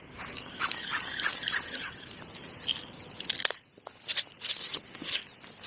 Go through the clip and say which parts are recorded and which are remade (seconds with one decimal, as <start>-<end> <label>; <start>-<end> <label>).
0.0-5.7 recorded